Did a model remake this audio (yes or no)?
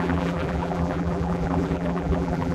yes